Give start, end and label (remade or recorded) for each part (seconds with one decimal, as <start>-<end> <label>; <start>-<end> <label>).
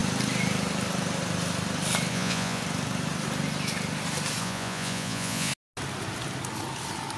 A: 0.0-2.1 recorded; 2.1-2.6 remade; 2.6-4.4 recorded; 4.4-5.5 remade; 5.5-7.2 recorded